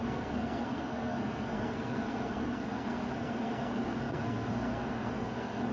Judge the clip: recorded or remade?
remade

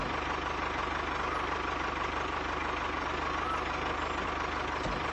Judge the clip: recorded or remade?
recorded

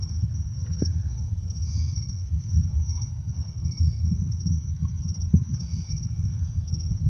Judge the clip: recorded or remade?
remade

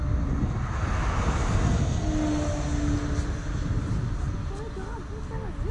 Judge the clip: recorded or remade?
recorded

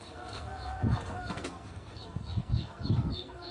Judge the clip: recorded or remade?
remade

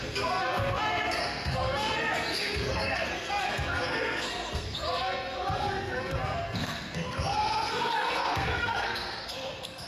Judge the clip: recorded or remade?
remade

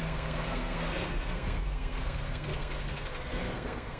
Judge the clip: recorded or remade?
remade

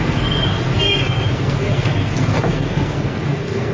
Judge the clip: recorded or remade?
remade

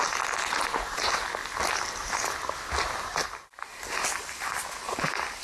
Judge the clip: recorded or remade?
recorded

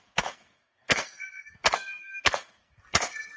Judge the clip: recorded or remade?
remade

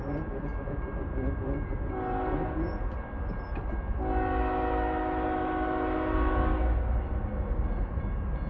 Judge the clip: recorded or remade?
recorded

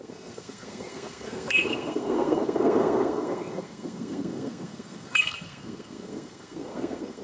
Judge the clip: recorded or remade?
remade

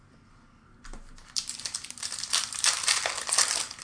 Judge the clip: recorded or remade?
recorded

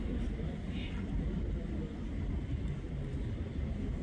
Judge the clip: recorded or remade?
recorded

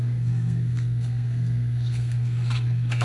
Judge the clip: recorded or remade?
remade